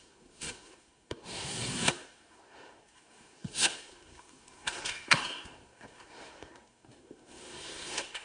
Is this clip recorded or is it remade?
remade